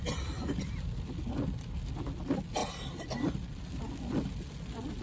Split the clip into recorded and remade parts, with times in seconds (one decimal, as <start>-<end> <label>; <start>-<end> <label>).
0.0-5.0 recorded